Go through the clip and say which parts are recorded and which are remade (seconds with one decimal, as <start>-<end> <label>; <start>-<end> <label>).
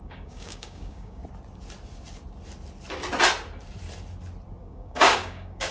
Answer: 0.0-1.2 remade; 1.2-4.6 recorded; 4.6-5.7 remade